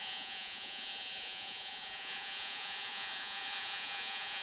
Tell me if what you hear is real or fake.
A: fake